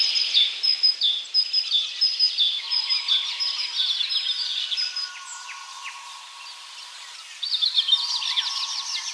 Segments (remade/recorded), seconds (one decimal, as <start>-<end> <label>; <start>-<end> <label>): 0.0-9.1 recorded